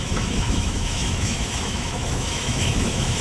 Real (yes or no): no